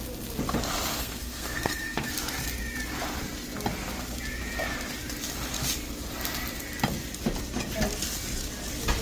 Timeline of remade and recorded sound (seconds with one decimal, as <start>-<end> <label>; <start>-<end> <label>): 0.0-0.9 recorded; 0.9-2.1 remade; 2.1-9.0 recorded